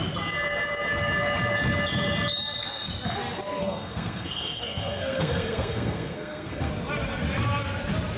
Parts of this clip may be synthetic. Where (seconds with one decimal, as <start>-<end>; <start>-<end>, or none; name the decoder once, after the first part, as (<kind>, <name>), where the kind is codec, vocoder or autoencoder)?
3.6-6.7 (codec, SNAC)